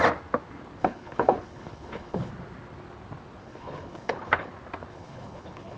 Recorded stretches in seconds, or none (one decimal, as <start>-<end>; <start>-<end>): 0.0-0.8; 2.3-3.4; 4.5-4.9